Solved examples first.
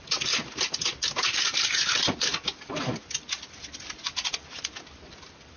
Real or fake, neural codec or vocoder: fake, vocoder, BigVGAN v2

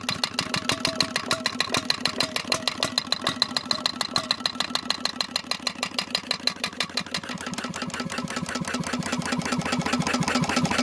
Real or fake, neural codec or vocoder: real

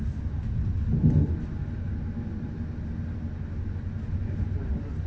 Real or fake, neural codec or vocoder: real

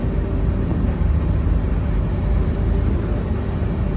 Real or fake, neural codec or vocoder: real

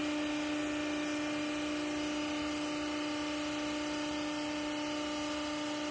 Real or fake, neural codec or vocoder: real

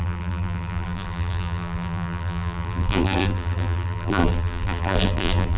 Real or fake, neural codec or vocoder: fake, vocoder, BigVGAN v2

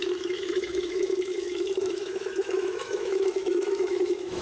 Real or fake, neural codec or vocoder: fake, autoencoder, DAC-VAE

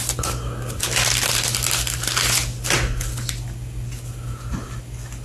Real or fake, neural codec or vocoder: real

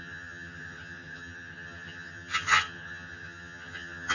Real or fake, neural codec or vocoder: fake, vocoder, HiFi-GAN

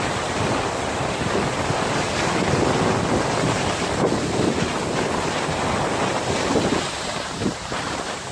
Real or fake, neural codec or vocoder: real